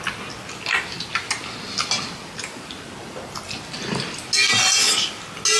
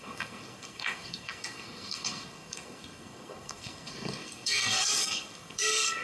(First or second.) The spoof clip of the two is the second